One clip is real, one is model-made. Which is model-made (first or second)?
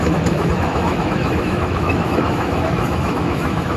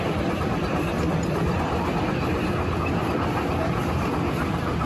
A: first